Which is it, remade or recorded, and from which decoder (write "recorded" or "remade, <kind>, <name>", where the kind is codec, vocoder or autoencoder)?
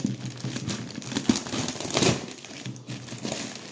recorded